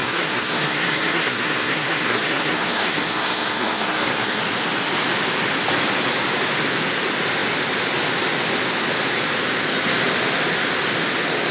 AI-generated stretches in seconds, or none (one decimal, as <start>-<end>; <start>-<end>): 0.0-4.4